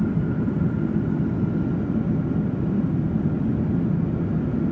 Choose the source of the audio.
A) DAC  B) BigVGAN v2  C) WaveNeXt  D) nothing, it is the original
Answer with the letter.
D